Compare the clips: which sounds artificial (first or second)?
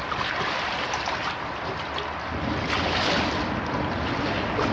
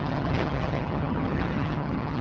second